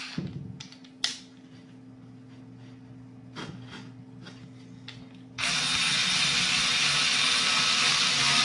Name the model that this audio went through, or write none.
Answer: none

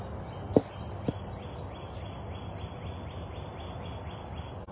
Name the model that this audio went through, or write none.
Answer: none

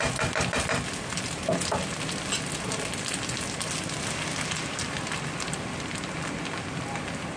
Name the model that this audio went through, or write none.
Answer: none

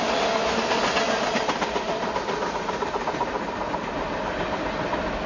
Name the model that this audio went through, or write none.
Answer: none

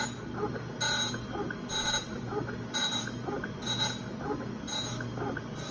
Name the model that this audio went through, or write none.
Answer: none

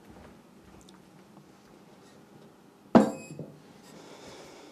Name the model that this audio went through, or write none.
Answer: none